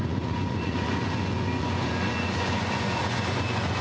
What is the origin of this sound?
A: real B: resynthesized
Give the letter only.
B